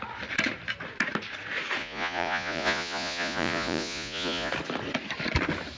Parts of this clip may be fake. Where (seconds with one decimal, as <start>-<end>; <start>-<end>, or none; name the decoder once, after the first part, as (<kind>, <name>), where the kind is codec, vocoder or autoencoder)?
1.8-4.5 (vocoder, Vocos)

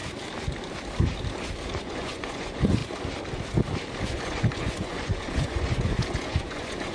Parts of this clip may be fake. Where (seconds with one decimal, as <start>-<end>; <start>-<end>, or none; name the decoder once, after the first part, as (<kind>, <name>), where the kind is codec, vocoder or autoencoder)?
1.8-2.8 (vocoder, Vocos); 4.0-6.9

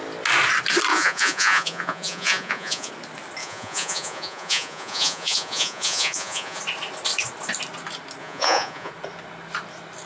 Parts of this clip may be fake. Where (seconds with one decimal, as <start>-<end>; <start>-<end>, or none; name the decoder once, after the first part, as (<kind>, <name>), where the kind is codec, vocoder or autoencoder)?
0.9-2.9 (vocoder, Vocos); 3.4-6.6; 8.2-8.9

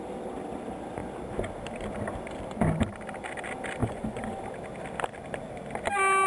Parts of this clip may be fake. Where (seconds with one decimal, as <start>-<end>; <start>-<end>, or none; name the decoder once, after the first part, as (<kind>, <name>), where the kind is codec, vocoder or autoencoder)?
3.8-4.4 (vocoder, Vocos)

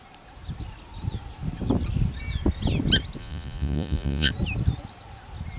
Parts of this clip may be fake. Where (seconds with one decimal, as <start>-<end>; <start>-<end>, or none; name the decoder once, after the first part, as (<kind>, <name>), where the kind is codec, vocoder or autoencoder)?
3.2-4.3 (vocoder, Vocos)

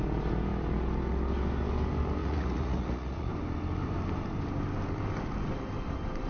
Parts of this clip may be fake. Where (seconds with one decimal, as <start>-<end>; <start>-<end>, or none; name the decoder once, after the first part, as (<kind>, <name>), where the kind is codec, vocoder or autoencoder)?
2.2-3.3 (vocoder, Vocos)

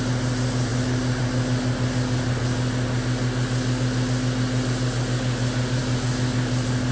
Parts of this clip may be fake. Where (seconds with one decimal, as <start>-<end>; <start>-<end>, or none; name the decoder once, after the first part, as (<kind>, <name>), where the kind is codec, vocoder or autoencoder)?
none